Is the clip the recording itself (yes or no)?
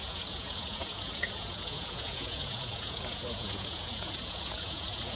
no